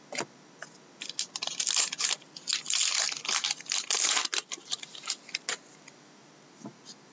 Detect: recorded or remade recorded